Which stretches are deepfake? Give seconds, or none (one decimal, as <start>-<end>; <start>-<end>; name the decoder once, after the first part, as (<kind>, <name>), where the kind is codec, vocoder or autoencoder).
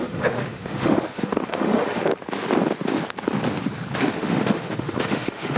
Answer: 0.0-2.1 (autoencoder, DAC-VAE); 4.0-5.6